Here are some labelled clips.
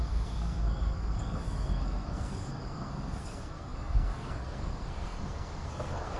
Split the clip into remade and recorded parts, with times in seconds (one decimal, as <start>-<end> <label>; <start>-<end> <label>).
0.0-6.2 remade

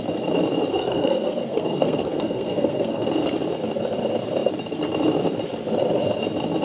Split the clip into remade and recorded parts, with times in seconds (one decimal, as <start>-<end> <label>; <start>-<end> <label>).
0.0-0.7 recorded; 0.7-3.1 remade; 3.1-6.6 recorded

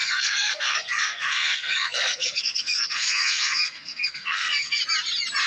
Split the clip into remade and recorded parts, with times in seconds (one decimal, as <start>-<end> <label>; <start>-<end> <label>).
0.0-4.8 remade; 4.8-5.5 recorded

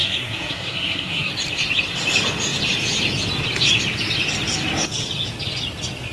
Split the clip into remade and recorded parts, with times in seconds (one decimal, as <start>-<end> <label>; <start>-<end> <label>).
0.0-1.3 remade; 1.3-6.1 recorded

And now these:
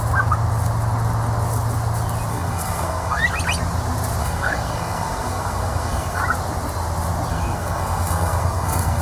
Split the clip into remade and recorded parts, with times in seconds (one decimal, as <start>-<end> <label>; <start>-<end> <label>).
0.0-2.3 recorded; 2.3-3.2 remade; 3.2-4.2 recorded; 4.2-6.2 remade; 6.2-7.3 recorded; 7.3-9.0 remade

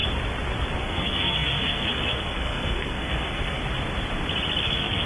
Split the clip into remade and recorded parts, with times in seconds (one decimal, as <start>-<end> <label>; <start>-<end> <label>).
0.0-0.8 recorded; 0.8-3.6 remade; 3.6-4.6 recorded; 4.6-5.1 remade

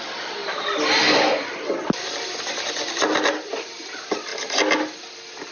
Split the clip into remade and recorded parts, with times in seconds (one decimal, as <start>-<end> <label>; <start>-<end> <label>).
0.0-5.5 recorded

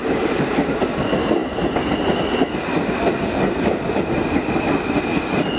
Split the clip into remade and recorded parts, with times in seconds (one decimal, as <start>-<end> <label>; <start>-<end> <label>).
0.0-5.6 recorded